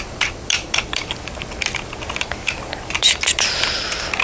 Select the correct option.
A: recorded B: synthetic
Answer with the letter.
B